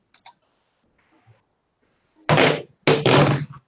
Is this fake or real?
real